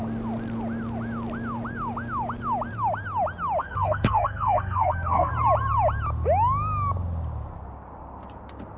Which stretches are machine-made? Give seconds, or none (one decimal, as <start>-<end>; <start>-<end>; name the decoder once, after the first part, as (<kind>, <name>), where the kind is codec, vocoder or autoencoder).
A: 3.6-5.3 (codec, SNAC)